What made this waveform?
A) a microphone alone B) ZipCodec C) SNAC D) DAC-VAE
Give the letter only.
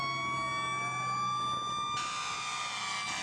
A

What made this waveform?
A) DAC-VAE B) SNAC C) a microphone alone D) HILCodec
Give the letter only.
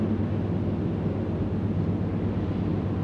C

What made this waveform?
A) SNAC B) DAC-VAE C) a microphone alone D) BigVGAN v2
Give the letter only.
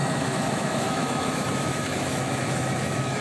B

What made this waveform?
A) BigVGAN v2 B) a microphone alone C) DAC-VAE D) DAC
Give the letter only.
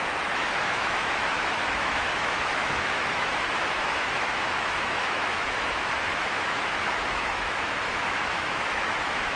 C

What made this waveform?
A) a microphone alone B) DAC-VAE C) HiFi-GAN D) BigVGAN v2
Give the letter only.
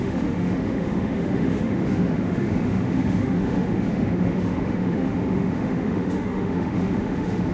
B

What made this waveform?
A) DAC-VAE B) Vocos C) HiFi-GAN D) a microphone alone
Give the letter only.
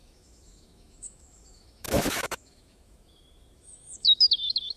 A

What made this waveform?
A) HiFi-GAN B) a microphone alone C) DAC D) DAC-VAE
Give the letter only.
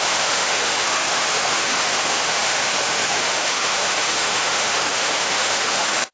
D